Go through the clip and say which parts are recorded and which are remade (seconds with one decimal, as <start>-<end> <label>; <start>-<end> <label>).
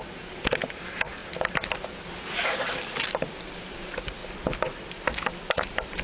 0.0-6.0 recorded